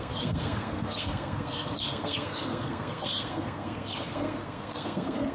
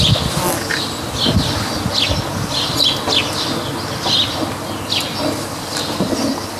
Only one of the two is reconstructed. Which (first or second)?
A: first